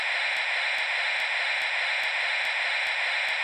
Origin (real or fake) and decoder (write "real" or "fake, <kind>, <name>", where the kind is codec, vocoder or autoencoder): real